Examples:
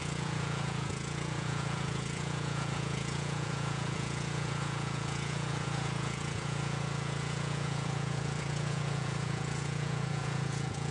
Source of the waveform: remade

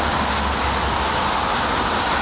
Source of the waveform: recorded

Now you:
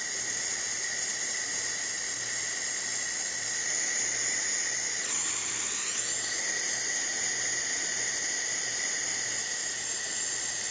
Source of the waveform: recorded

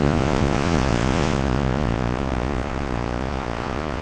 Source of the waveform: remade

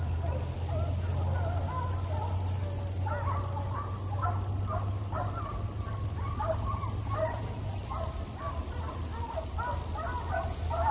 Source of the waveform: recorded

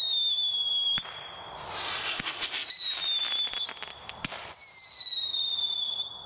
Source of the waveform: recorded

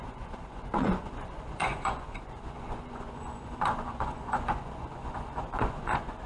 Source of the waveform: remade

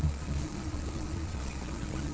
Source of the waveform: remade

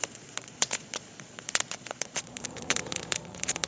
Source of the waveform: remade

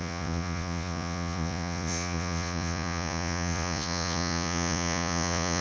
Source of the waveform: remade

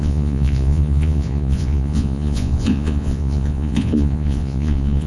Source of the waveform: remade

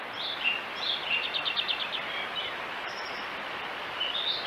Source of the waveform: recorded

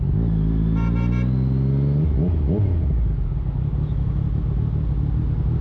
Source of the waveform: recorded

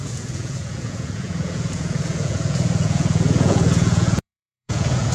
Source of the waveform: remade